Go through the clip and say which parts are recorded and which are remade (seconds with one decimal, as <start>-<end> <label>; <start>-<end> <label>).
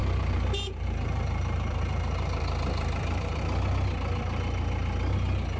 0.0-3.4 remade; 3.4-5.6 recorded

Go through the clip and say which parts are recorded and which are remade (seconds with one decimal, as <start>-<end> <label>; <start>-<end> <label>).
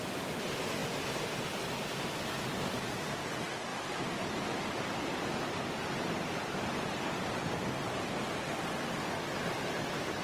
0.0-10.2 recorded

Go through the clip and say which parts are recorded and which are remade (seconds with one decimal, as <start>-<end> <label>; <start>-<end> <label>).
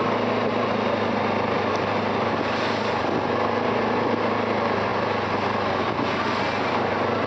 0.0-7.3 recorded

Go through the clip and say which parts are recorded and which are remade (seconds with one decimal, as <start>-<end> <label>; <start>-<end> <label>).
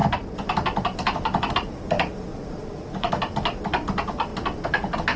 0.0-2.3 recorded; 2.3-3.1 remade; 3.1-5.2 recorded